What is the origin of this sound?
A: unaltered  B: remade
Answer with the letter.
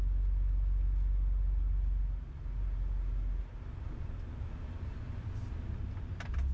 A